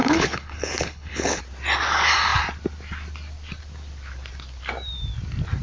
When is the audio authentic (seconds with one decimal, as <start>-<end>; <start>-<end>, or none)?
1.4-5.6